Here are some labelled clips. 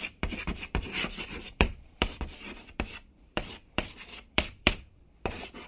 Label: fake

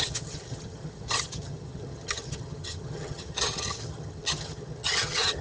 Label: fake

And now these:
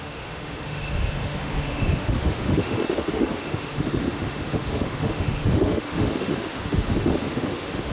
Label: fake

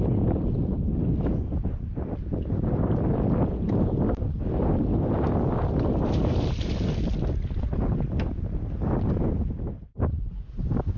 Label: real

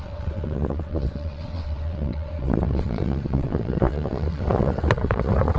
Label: fake